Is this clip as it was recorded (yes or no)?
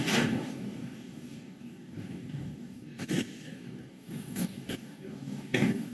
no